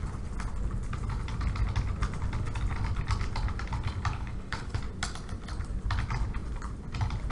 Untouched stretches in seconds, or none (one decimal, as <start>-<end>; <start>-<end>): 0.0-4.1; 4.8-7.3